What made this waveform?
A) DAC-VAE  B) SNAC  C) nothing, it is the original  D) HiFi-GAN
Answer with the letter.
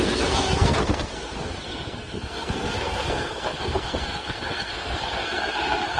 B